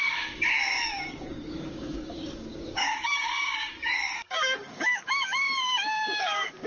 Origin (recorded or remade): remade